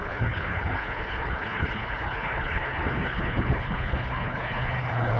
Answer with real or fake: fake